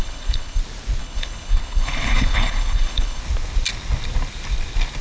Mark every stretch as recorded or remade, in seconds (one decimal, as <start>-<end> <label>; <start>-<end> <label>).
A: 0.0-0.6 remade; 0.6-1.0 recorded; 1.0-3.2 remade; 3.2-5.0 recorded